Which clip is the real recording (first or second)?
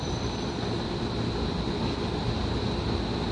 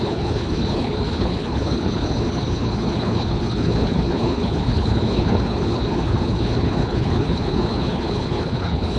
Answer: first